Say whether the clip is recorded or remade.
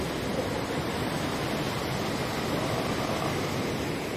recorded